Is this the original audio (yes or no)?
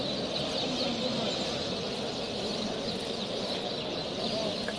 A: yes